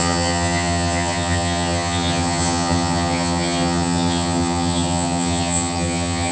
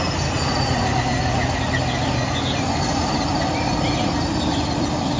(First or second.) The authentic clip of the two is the second